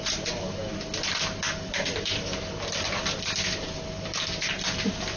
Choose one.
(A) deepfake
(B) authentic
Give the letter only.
B